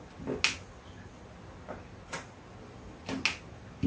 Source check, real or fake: real